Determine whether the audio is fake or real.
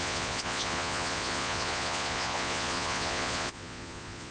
fake